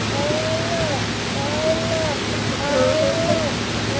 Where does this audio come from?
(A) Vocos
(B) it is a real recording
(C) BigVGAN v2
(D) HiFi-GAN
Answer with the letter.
B